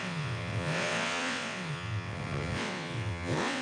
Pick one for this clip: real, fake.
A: fake